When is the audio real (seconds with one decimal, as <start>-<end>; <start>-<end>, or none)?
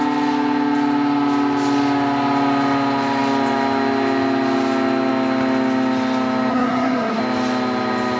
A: 0.0-6.5; 7.2-8.2